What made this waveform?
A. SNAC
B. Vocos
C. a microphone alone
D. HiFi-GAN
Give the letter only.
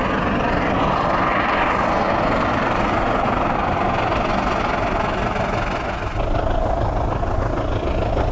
C